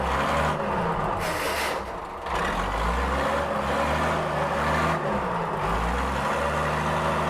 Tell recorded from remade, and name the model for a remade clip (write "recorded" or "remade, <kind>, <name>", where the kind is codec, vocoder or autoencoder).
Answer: recorded